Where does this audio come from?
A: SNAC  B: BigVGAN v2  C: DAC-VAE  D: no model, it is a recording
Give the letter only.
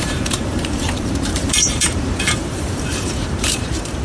B